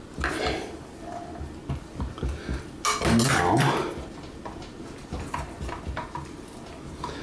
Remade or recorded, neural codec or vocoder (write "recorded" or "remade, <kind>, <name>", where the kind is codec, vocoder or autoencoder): recorded